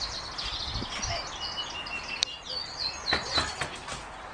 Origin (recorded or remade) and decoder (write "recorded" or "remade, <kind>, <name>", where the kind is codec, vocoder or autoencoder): recorded